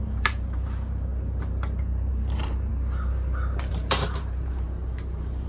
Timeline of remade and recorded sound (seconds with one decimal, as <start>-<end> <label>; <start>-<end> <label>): 0.0-2.7 remade; 2.7-3.7 recorded; 3.7-5.5 remade